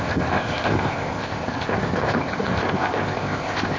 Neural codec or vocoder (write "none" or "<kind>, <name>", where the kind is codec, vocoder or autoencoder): codec, ZipCodec